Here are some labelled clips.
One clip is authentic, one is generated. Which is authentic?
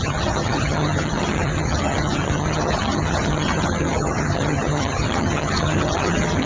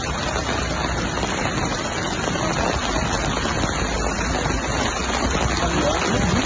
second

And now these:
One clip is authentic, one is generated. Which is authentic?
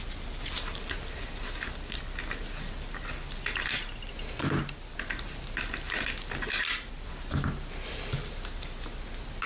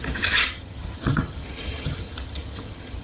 first